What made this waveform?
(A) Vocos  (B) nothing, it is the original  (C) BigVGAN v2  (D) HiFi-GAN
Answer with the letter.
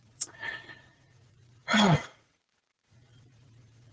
A